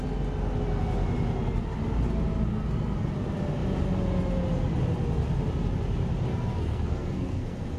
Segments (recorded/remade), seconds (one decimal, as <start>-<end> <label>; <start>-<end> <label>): 0.0-2.5 recorded; 2.5-3.1 remade; 3.1-6.3 recorded; 6.3-7.8 remade